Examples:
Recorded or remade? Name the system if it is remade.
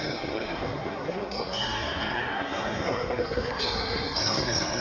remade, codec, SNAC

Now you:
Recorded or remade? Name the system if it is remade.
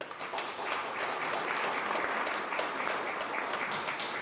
recorded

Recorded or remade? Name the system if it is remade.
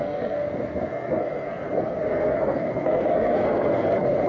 remade, codec, SNAC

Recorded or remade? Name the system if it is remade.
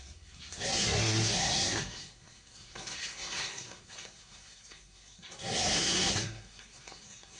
remade, codec, SNAC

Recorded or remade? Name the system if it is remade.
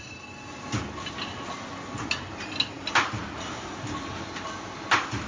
recorded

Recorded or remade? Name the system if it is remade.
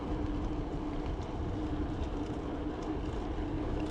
recorded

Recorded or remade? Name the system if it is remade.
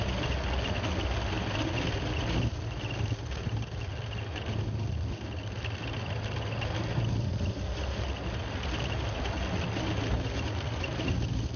recorded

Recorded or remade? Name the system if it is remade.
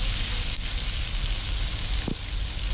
recorded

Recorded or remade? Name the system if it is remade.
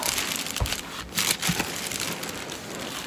remade, vocoder, BigVGAN v2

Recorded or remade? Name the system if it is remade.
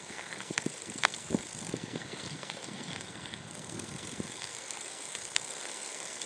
remade, codec, SNAC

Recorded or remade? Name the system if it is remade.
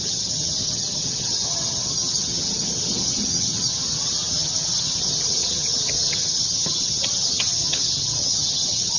remade, vocoder, HiFi-GAN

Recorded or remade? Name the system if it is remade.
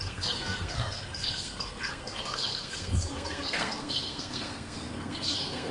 remade, codec, SNAC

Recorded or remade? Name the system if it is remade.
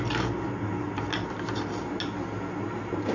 recorded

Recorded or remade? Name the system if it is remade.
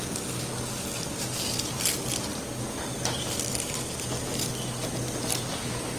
recorded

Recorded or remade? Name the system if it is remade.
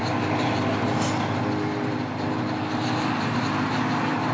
recorded